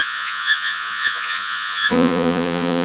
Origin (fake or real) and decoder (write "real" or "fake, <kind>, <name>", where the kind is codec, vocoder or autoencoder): fake, vocoder, Vocos